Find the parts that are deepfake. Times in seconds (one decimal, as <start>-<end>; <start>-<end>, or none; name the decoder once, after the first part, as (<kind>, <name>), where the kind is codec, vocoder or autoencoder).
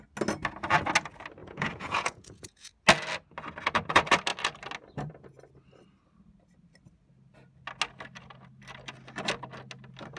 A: 1.4-2.7 (vocoder, Vocos)